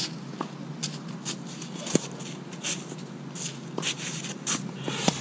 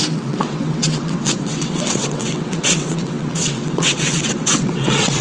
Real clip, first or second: first